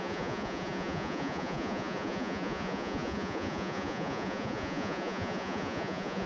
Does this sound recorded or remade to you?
remade